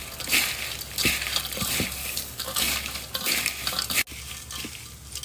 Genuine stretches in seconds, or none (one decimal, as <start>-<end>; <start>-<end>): 0.0-2.0; 2.7-5.2